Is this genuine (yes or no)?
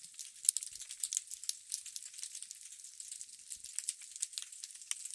yes